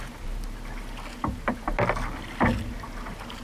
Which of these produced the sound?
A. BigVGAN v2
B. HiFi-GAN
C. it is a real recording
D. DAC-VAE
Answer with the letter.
C